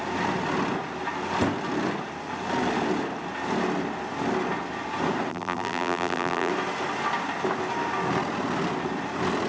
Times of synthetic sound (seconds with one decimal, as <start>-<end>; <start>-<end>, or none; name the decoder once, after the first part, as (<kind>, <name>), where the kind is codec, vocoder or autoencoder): 5.3-6.5 (vocoder, BigVGAN v2)

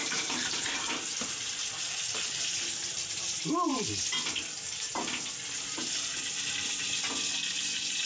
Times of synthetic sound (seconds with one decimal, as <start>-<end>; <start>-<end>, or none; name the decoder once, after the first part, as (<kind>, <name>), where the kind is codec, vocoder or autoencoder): 0.0-0.9 (vocoder, BigVGAN v2); 1.8-3.9

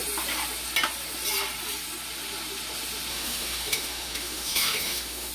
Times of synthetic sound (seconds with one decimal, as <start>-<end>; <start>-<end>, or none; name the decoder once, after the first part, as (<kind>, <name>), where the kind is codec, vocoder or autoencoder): 3.1-5.3 (autoencoder, DAC-VAE)

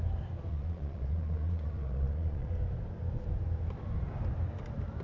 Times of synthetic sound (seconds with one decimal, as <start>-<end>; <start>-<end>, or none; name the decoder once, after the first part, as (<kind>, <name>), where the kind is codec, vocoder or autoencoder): 0.5-2.5 (vocoder, Vocos)

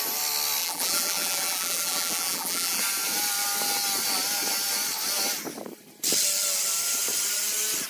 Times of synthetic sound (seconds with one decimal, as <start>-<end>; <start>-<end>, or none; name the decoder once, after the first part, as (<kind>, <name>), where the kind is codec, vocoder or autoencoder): 0.6-2.8 (vocoder, BigVGAN v2)

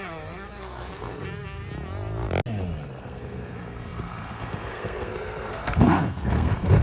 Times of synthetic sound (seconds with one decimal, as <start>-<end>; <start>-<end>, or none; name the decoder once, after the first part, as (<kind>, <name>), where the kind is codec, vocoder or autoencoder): 0.0-1.7 (codec, SNAC); 3.0-6.8

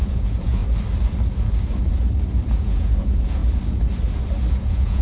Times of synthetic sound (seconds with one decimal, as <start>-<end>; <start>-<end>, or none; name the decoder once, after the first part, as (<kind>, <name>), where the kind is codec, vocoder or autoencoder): 0.0-0.6 (vocoder, Vocos); 2.6-3.4; 4.5-5.0

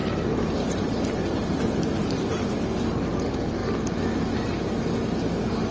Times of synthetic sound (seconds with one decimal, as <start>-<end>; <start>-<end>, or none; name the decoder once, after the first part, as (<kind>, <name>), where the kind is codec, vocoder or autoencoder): 0.0-3.6 (vocoder, BigVGAN v2)